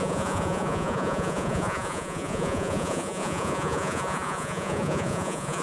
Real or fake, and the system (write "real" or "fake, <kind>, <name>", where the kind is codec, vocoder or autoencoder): fake, vocoder, Vocos